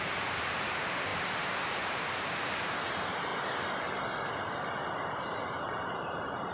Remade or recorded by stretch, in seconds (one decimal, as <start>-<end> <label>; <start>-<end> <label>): 0.0-3.3 remade; 3.3-5.6 recorded; 5.6-6.5 remade